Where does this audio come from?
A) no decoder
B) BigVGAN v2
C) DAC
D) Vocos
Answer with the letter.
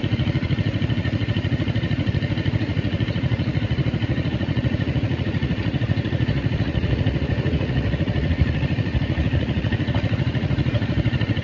D